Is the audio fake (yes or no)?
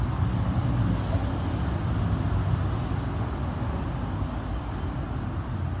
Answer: no